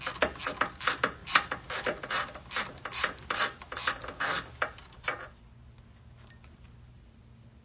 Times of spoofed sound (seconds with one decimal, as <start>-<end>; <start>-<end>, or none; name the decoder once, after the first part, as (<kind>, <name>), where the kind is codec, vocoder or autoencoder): 1.2-5.4 (vocoder, BigVGAN v2)